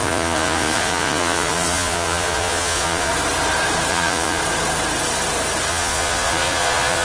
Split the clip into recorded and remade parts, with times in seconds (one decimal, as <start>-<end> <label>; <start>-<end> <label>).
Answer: 0.0-3.1 remade; 3.1-3.9 recorded; 3.9-4.4 remade; 4.4-5.7 recorded; 5.7-7.0 remade